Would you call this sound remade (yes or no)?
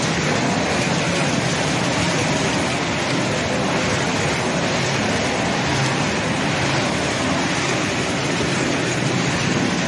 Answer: no